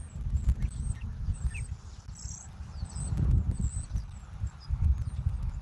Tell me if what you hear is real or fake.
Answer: real